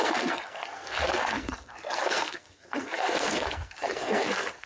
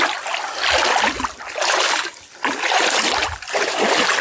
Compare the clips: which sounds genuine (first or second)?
second